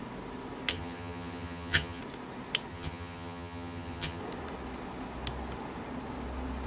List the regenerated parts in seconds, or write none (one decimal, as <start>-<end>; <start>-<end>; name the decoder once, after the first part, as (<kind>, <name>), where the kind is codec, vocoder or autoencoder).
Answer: 0.7-2.0 (vocoder, HiFi-GAN); 2.7-4.2